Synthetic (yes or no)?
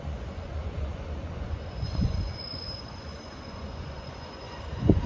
yes